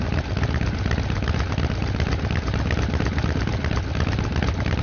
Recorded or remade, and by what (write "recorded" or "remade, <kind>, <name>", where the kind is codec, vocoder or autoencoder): remade, vocoder, BigVGAN v2